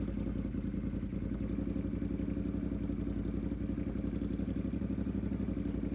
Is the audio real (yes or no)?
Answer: yes